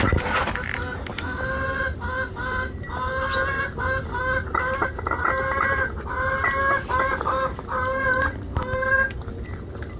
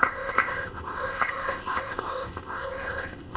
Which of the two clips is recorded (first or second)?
first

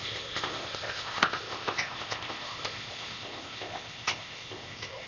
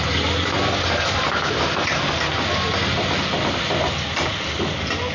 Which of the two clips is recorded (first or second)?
second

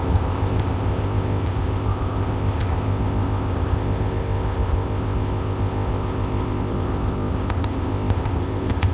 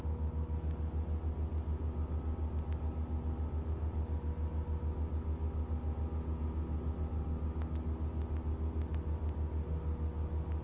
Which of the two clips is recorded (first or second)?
second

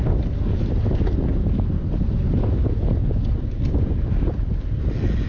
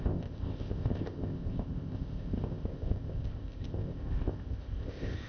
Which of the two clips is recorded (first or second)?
first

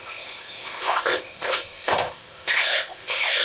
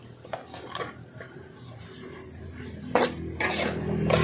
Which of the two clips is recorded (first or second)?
second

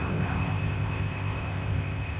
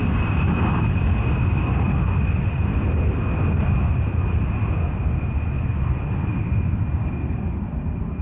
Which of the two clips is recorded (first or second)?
second